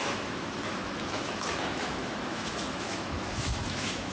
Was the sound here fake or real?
fake